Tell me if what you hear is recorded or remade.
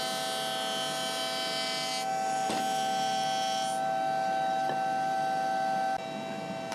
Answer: recorded